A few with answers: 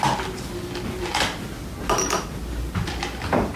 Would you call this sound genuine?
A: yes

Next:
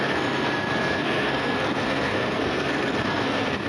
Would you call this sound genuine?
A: no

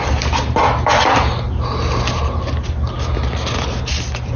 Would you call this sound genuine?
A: yes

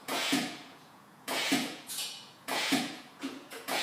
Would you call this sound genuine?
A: no